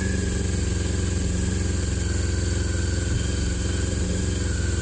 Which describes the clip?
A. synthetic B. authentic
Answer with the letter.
B